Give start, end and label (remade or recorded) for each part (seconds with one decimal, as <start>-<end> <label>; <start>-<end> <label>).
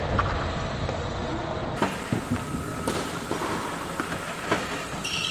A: 0.0-5.3 remade